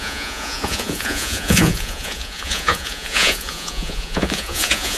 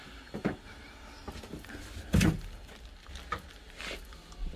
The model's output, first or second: first